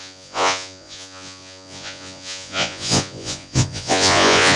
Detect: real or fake fake